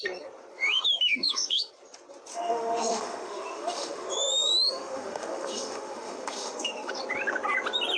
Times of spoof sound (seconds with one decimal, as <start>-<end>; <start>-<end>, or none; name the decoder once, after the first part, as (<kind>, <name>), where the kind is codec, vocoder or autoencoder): 0.5-1.7 (autoencoder, DAC-VAE); 2.3-6.9